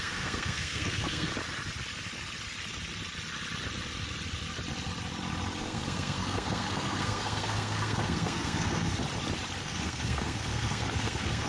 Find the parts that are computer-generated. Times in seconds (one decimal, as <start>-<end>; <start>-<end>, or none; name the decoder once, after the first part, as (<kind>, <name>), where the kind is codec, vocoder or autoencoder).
0.0-1.3 (codec, SNAC); 5.6-9.0; 9.6-11.5